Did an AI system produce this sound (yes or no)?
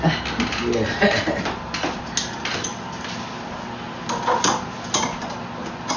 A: no